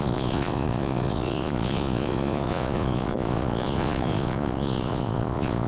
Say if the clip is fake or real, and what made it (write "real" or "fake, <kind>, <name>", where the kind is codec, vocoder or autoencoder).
fake, vocoder, Vocos